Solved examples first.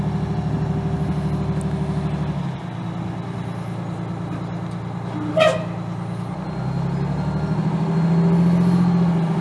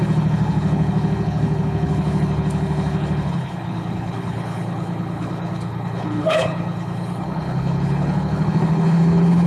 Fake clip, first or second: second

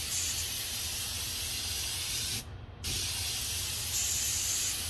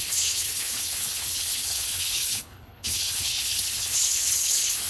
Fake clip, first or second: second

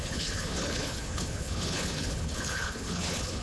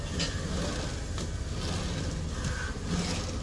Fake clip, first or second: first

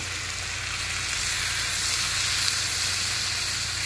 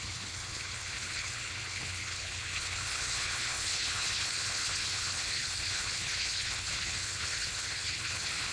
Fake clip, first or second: second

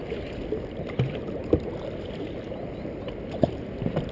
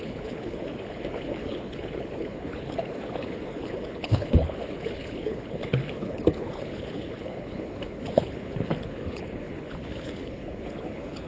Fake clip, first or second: second